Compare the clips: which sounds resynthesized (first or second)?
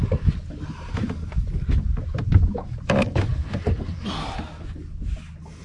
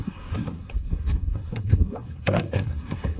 second